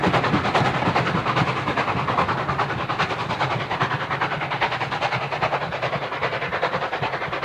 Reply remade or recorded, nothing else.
recorded